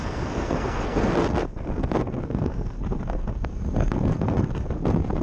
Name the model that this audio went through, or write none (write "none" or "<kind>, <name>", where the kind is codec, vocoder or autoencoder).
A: codec, SNAC